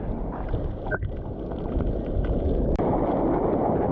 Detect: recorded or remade recorded